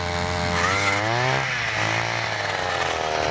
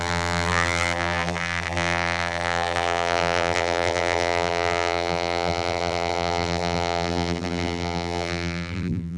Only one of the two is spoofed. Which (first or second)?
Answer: second